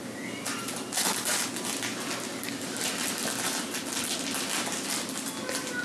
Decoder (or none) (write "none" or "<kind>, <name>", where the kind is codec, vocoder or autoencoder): none